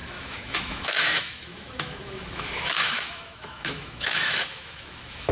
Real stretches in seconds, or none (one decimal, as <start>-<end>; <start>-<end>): none